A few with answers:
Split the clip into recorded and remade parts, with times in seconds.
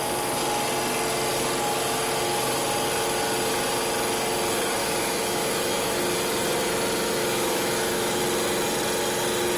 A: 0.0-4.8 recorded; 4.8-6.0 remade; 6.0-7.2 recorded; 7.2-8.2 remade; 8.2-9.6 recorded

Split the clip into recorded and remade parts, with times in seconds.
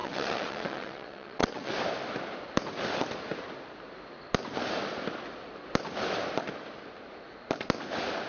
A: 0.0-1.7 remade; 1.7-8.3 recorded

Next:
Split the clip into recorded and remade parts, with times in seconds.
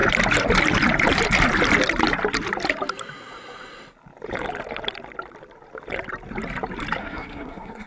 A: 0.0-7.0 recorded; 7.0-7.9 remade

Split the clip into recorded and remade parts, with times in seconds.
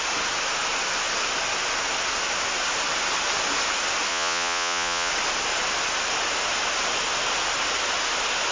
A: 0.0-4.1 recorded; 4.1-5.1 remade; 5.1-8.5 recorded